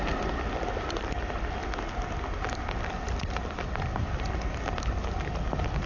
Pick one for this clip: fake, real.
real